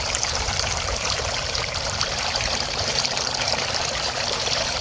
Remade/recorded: remade